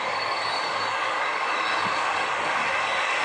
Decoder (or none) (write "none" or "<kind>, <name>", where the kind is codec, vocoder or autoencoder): codec, DAC